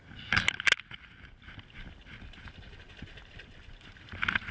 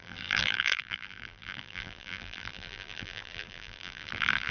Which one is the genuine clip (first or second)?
first